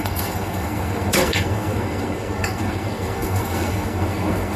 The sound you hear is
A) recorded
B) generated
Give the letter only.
B